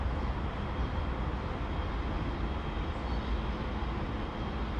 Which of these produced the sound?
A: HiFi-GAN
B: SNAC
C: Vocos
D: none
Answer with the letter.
D